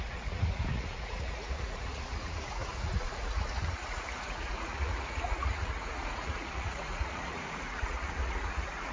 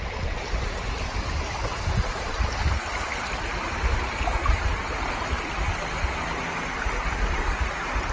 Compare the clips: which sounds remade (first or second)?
first